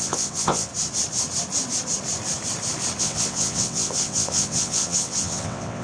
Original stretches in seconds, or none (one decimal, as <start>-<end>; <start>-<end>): 0.7-3.0